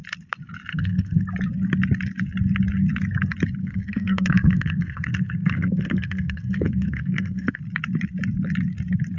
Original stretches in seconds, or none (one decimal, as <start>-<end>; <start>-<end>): 0.0-0.7; 1.2-3.6; 7.6-9.2